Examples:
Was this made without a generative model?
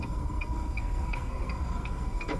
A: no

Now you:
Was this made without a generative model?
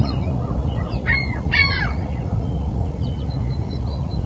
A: no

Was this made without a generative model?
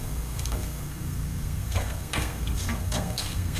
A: no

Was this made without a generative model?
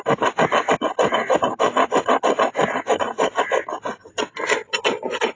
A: yes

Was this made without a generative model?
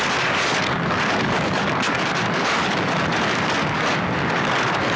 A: no